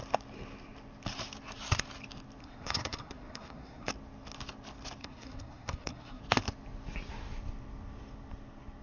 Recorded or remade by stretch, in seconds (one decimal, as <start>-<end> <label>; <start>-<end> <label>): 0.0-2.4 recorded; 2.4-3.9 remade; 3.9-5.0 recorded; 5.0-6.2 remade; 6.2-8.8 recorded